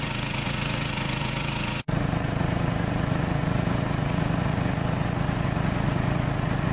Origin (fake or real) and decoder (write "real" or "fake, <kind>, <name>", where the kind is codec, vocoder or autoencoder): fake, vocoder, Vocos